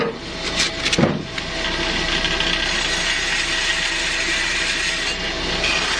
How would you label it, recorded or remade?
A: recorded